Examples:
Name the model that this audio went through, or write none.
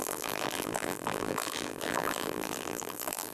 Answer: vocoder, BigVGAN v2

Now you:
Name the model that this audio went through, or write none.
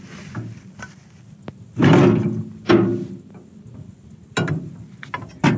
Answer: none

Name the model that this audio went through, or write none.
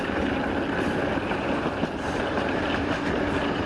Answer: vocoder, BigVGAN v2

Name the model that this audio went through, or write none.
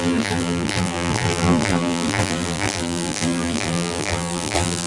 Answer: vocoder, BigVGAN v2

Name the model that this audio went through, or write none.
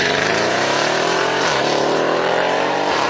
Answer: vocoder, BigVGAN v2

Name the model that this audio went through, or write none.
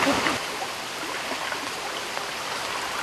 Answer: none